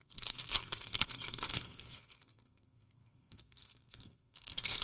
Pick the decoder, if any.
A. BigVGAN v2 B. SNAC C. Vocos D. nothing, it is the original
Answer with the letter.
B